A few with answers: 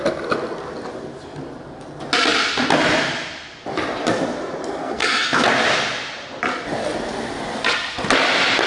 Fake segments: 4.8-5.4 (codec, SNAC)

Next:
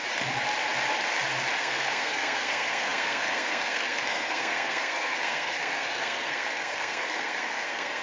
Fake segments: 1.6-8.0 (codec, SNAC)

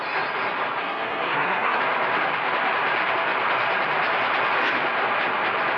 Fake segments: 0.8-1.8 (codec, SNAC)

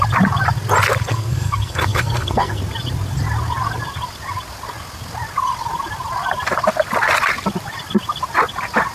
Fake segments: 1.1-2.6 (codec, SNAC)